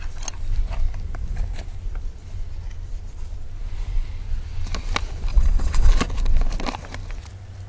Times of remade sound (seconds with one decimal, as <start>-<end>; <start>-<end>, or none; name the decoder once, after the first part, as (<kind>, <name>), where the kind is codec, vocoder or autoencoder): 5.3-5.9 (vocoder, WaveNeXt)